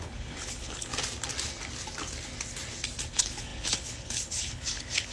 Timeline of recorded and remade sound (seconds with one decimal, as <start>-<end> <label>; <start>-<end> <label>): 0.0-0.9 remade; 0.9-3.1 recorded; 3.1-5.1 remade